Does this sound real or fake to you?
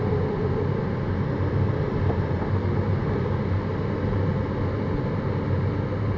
real